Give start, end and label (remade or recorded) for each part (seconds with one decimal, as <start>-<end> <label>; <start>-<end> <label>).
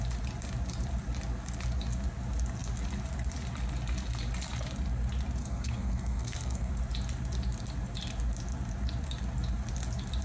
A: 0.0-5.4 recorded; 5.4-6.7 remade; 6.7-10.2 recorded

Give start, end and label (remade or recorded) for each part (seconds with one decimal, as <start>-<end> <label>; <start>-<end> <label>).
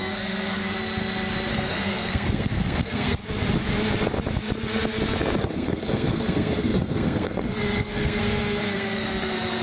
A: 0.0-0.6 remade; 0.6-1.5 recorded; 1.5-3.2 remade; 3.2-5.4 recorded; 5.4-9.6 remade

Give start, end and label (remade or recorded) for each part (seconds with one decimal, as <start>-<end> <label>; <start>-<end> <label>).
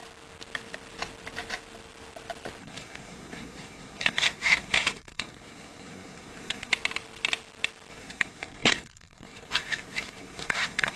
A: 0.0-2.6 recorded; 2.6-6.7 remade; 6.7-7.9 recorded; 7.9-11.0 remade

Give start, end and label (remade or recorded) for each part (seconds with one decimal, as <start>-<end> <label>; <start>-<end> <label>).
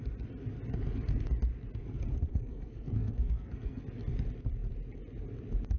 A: 0.0-2.3 recorded; 2.3-3.8 remade; 3.8-5.8 recorded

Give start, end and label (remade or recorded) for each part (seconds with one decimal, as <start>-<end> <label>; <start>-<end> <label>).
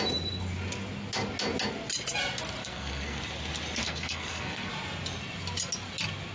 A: 0.0-2.6 recorded; 2.6-3.2 remade; 3.2-3.8 recorded; 3.8-4.7 remade; 4.7-6.3 recorded